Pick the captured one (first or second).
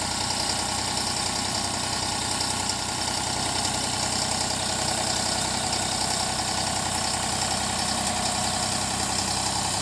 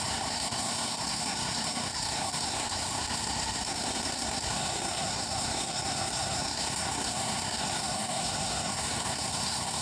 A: first